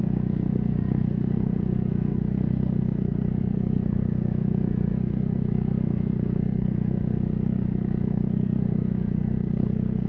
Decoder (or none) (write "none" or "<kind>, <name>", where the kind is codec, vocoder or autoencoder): codec, SNAC